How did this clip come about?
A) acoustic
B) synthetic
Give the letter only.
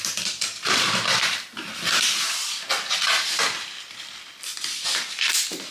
B